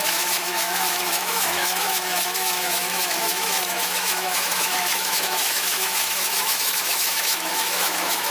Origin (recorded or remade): remade